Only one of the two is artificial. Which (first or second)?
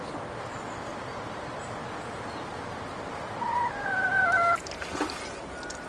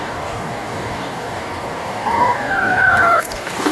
second